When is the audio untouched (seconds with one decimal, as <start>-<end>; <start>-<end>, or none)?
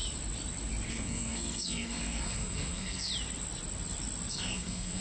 0.0-0.9; 3.1-4.3